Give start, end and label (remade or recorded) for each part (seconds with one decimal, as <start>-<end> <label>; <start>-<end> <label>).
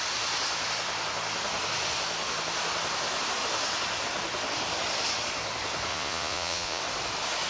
0.0-5.9 recorded; 5.9-6.8 remade; 6.8-7.5 recorded